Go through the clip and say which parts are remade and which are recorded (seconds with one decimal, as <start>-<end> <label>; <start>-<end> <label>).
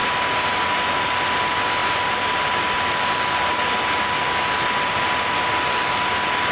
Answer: 0.0-6.5 recorded